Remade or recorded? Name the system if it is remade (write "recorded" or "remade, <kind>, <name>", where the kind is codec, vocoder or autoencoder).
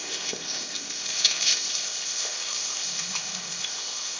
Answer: remade, codec, ZipCodec